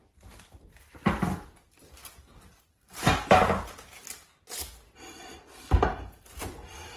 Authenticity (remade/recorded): recorded